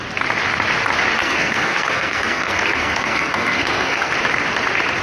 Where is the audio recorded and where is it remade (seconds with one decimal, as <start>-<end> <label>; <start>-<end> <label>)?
0.0-1.2 recorded; 1.2-4.1 remade; 4.1-5.0 recorded